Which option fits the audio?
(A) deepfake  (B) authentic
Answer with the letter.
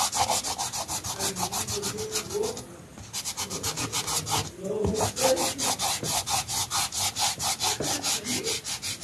B